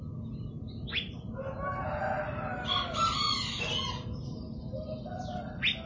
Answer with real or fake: real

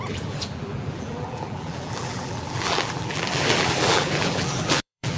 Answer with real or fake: fake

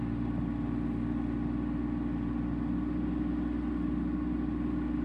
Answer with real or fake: real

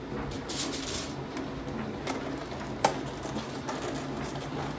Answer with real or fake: real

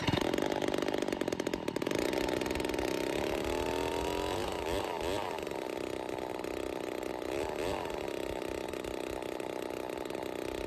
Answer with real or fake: real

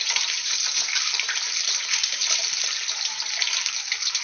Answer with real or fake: fake